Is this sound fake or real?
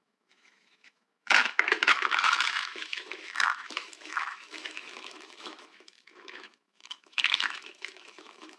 fake